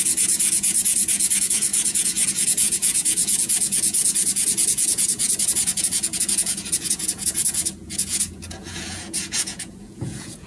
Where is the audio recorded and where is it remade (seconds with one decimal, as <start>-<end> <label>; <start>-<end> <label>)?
0.0-10.5 remade